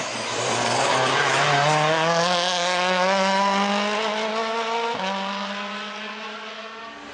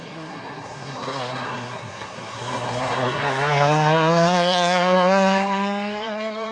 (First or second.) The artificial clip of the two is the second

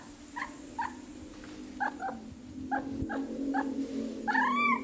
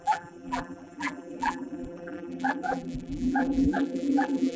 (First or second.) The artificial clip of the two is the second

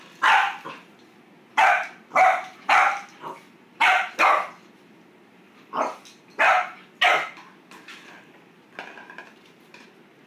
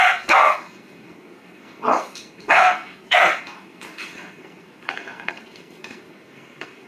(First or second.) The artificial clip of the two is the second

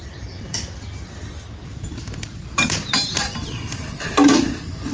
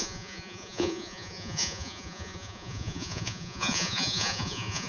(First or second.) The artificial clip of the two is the second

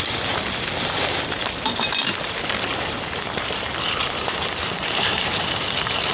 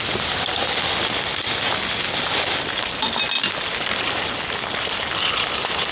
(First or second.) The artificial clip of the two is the first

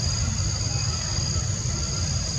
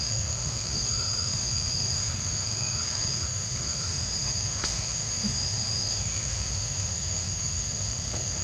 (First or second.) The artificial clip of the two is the second